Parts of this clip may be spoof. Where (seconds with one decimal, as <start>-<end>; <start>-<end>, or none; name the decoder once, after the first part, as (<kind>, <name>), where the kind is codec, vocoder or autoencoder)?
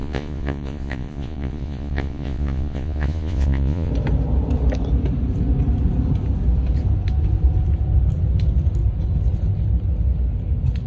0.0-3.9 (vocoder, Vocos)